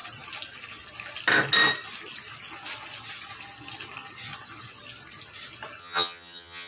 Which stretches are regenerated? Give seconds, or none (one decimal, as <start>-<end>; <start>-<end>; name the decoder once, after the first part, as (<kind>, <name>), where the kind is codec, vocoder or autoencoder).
5.8-6.7 (vocoder, HiFi-GAN)